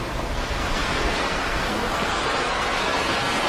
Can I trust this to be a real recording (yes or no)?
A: no